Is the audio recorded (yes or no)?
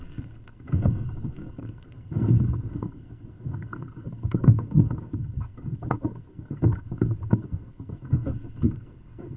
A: no